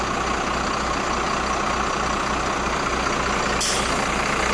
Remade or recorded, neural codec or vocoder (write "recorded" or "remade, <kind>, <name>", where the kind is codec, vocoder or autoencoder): recorded